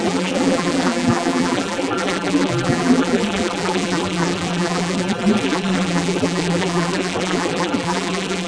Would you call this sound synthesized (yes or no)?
yes